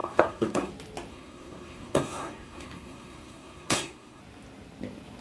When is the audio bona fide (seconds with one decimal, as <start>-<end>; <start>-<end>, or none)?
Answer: 0.7-1.1; 4.2-5.2